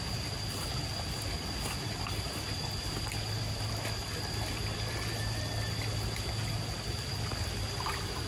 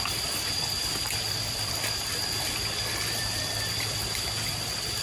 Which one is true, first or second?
first